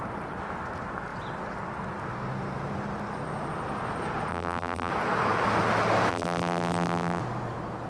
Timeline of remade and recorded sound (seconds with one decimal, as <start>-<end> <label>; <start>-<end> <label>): 0.0-4.3 recorded; 4.3-4.9 remade; 4.9-6.1 recorded; 6.1-7.2 remade; 7.2-7.9 recorded